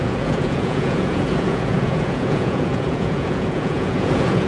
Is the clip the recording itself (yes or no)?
no